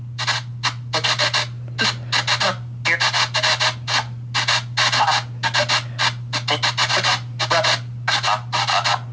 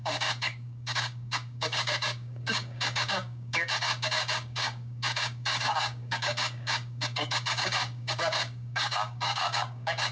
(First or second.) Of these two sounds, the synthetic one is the second